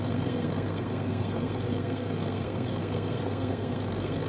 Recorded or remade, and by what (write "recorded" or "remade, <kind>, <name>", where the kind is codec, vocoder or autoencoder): remade, codec, SNAC